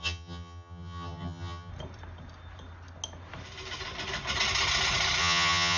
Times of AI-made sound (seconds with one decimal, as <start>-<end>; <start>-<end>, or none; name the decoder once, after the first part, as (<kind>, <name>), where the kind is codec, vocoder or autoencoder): 0.0-1.7 (vocoder, HiFi-GAN); 5.2-5.8